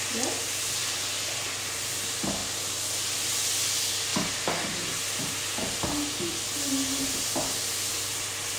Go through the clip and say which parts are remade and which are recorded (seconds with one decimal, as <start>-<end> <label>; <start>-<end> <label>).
0.0-8.6 recorded